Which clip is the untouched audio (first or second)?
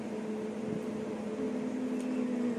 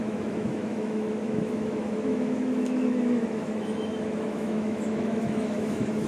first